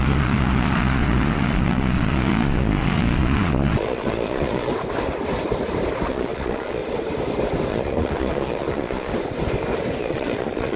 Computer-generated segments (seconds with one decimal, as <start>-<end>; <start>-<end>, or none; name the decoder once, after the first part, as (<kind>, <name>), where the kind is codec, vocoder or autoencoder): 0.0-4.7 (vocoder, Vocos); 6.1-6.8; 7.7-9.1; 10.0-10.8